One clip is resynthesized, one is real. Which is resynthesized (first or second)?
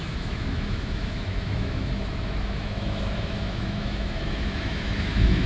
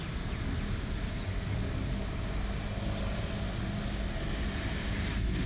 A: first